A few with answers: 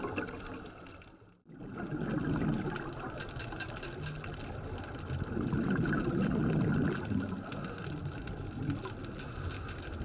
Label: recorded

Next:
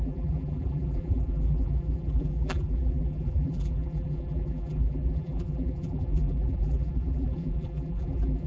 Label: remade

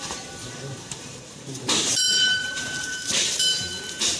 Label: remade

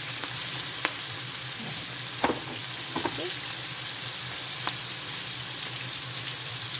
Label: remade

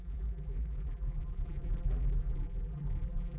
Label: remade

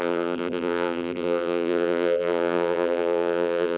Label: remade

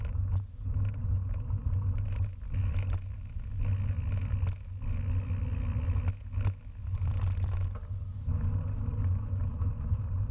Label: recorded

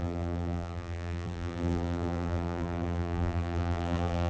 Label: remade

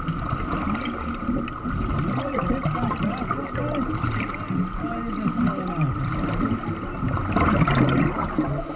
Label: recorded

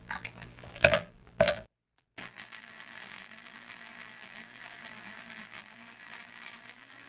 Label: remade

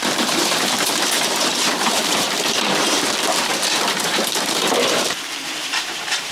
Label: remade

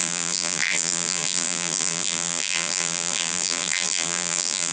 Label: remade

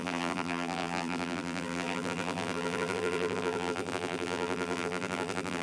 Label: remade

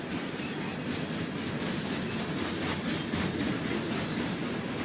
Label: recorded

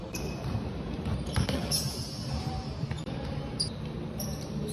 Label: remade